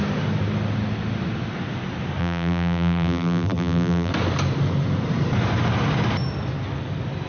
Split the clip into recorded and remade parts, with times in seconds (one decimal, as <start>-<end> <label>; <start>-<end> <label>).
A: 0.0-2.2 recorded; 2.2-4.1 remade; 4.1-7.3 recorded